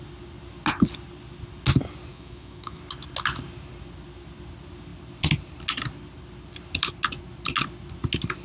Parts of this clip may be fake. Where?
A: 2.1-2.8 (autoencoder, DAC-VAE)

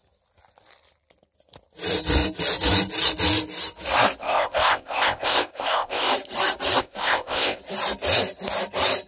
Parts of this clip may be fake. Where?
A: 4.2-6.1 (codec, ZipCodec); 6.8-7.6

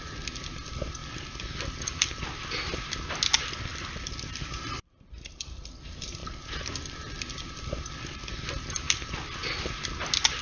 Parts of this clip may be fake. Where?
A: 1.0-2.1 (vocoder, BigVGAN v2); 3.7-5.5; 6.2-7.5